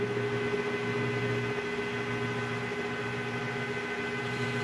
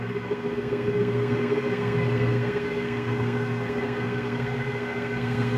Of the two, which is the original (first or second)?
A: first